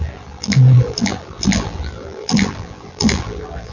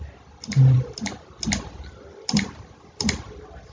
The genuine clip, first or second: second